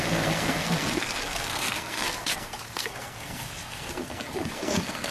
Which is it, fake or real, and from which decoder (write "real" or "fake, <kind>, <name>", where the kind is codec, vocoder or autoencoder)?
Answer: fake, codec, SNAC